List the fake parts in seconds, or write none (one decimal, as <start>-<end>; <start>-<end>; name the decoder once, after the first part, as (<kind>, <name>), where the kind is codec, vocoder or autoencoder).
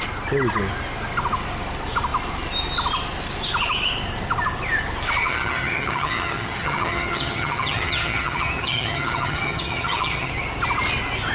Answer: 5.2-10.3 (vocoder, HiFi-GAN)